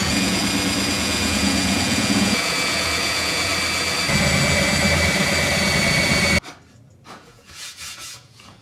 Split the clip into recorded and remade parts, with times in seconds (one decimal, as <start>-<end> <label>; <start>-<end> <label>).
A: 0.0-0.4 remade; 0.4-0.9 recorded; 0.9-3.5 remade; 3.5-7.1 recorded; 7.1-8.6 remade